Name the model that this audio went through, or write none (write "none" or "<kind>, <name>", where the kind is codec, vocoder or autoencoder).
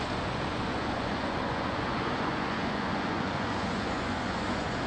vocoder, Vocos